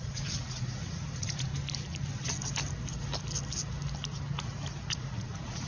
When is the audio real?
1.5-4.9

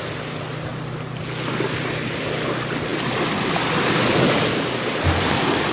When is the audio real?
0.0-5.7

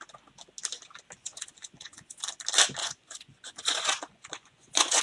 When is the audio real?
0.0-1.2; 2.2-2.8

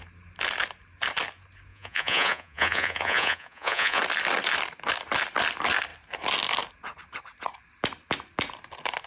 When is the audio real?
0.0-1.7; 4.0-9.1

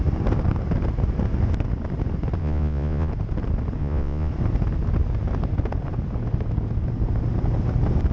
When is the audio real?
0.0-2.4; 3.1-3.8; 4.3-8.1

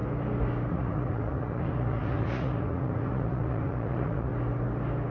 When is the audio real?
0.0-0.7; 4.3-5.1

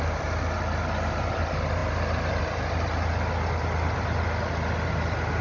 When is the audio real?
0.0-5.4